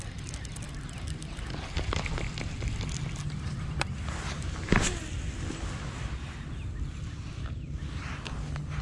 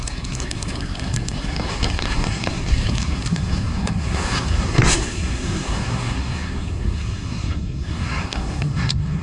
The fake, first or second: second